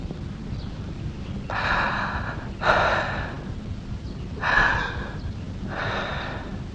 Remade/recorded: recorded